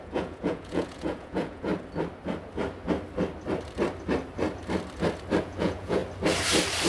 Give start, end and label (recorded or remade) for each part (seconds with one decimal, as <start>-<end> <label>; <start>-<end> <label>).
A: 0.0-1.7 remade; 1.7-5.4 recorded; 5.4-6.0 remade; 6.0-6.9 recorded